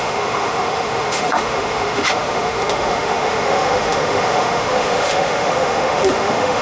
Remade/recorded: remade